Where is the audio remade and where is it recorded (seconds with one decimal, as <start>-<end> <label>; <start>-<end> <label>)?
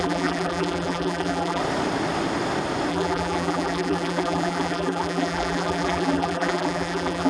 0.0-1.6 remade; 1.6-2.9 recorded; 2.9-7.3 remade